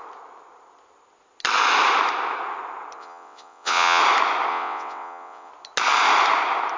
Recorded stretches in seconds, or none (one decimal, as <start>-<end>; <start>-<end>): 0.0-3.0; 4.0-4.5; 5.5-6.8